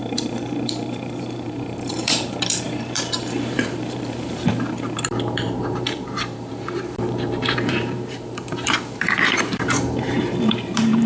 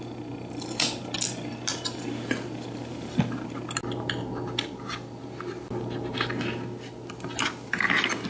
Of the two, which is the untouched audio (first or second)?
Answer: second